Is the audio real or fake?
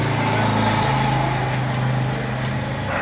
real